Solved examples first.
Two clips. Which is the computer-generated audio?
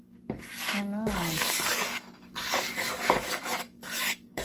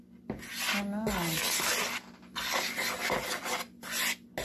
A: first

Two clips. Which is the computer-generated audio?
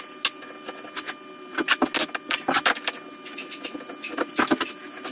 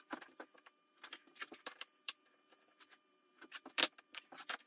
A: second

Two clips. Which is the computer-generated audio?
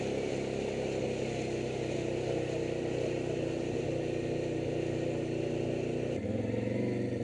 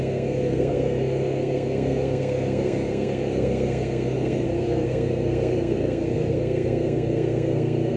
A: second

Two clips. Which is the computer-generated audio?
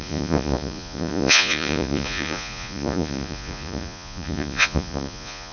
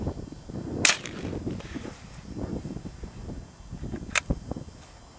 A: first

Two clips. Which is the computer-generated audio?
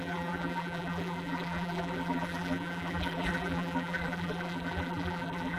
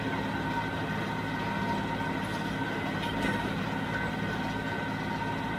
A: first